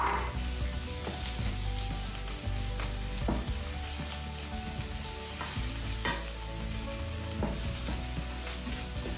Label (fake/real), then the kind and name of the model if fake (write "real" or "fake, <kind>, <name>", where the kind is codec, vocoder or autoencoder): real